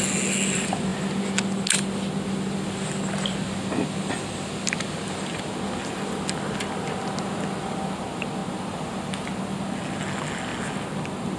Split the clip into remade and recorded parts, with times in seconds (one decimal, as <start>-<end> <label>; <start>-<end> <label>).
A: 0.0-11.4 recorded